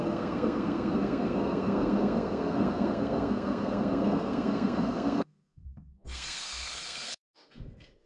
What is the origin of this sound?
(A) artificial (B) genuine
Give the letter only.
A